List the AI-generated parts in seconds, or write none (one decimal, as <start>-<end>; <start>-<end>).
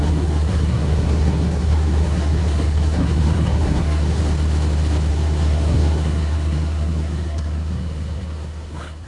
0.0-4.2; 5.1-9.1